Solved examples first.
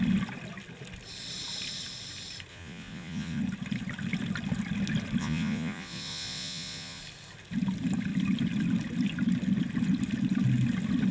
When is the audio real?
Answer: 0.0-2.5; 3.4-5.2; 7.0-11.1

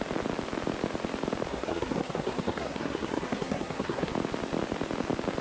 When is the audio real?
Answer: 0.0-1.5; 4.1-5.4

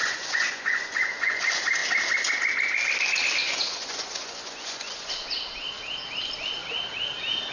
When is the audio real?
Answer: 1.4-3.4; 5.1-7.5

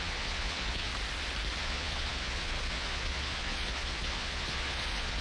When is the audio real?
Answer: 0.9-1.6

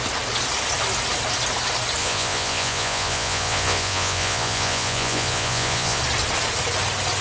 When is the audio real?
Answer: 0.0-2.0; 6.0-7.2

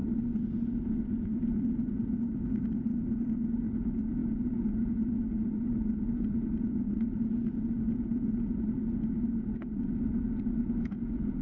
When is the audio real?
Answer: 0.0-0.5

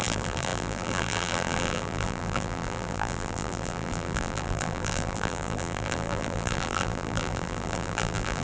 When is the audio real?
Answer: none

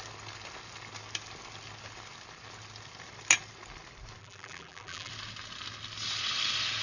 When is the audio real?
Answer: 0.0-4.2; 5.1-6.8